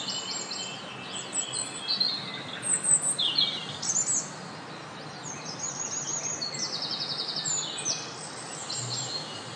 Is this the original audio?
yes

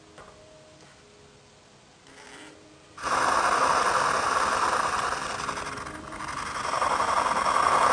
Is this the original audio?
yes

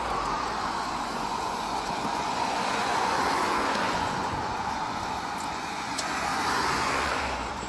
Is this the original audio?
no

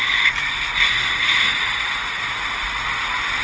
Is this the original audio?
yes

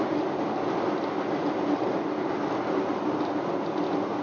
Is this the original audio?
yes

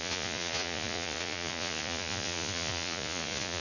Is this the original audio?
no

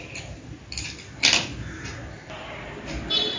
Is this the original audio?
yes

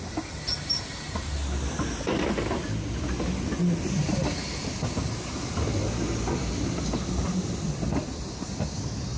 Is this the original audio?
yes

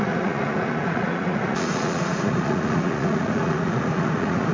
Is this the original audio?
no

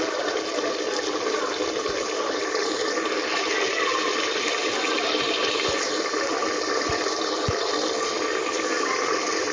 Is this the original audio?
yes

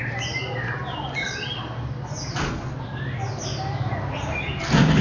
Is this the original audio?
yes